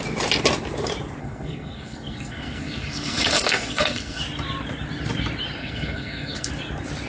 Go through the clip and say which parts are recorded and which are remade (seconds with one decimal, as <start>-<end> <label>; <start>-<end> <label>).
0.0-1.2 recorded; 1.2-4.2 remade; 4.2-5.6 recorded; 5.6-6.5 remade; 6.5-7.1 recorded

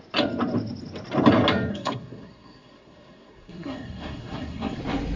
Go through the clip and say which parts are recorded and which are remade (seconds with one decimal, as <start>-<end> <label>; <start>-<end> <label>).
0.0-1.7 recorded; 1.7-4.8 remade; 4.8-5.2 recorded

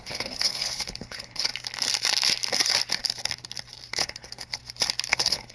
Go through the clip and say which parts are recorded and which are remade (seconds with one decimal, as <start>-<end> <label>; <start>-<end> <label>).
0.0-1.5 remade; 1.5-3.9 recorded; 3.9-4.6 remade; 4.6-5.1 recorded; 5.1-5.5 remade

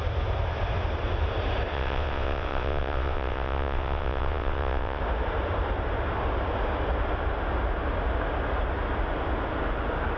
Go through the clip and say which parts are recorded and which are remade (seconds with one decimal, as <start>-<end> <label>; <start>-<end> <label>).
0.0-1.7 recorded; 1.7-5.0 remade; 5.0-10.2 recorded

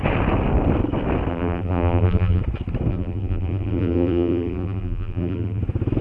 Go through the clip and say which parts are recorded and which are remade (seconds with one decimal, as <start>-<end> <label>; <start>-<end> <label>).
0.0-1.3 recorded; 1.3-2.4 remade; 2.4-2.9 recorded; 2.9-5.6 remade; 5.6-6.0 recorded

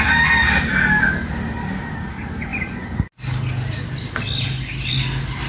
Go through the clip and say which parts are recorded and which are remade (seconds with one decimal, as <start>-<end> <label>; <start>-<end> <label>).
0.0-5.5 recorded